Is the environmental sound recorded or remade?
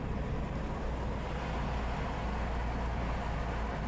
recorded